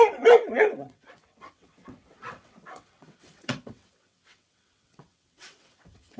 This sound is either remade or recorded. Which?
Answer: remade